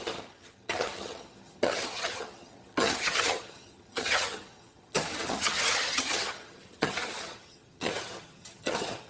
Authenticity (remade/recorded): remade